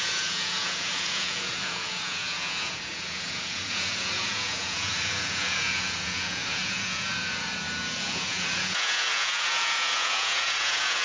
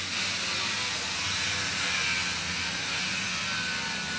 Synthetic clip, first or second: first